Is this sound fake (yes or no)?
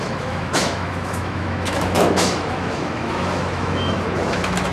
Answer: yes